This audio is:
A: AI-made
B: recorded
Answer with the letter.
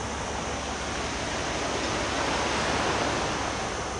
B